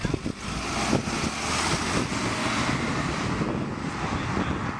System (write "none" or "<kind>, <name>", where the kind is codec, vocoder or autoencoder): none